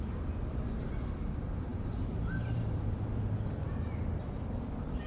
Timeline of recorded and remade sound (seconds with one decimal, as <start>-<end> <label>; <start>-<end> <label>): 0.0-5.1 recorded